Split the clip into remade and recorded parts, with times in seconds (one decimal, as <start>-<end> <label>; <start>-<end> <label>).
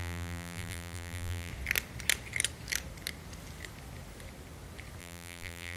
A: 0.0-1.5 remade; 1.5-5.0 recorded; 5.0-5.8 remade